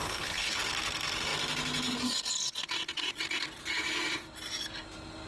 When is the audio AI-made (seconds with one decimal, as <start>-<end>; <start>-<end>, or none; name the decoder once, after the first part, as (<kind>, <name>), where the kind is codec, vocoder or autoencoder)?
0.0-0.6 (codec, HILCodec)